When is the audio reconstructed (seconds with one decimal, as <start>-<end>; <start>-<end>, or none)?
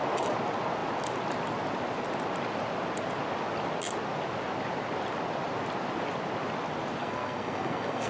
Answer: 7.0-8.1